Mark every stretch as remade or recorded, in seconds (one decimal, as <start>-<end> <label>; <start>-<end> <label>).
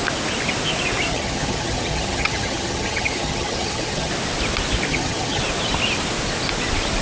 0.0-1.1 recorded; 1.1-4.1 remade; 4.1-4.9 recorded; 4.9-5.4 remade; 5.4-7.0 recorded